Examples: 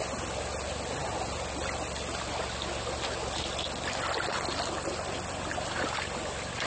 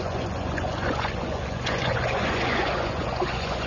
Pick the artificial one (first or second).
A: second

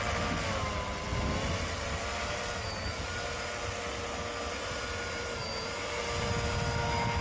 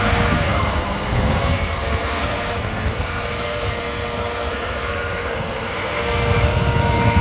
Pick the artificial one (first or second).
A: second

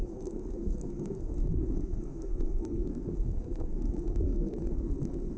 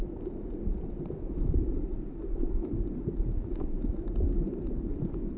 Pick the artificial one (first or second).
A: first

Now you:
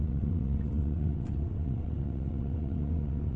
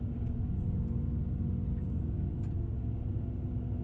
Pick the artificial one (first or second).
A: first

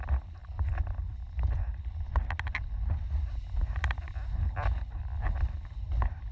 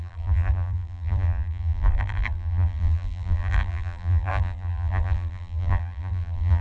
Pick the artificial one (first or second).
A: second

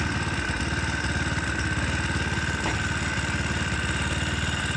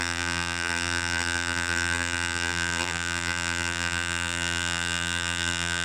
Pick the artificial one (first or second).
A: second